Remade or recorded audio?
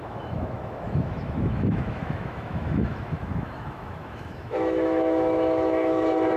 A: remade